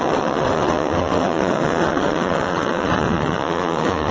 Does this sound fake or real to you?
fake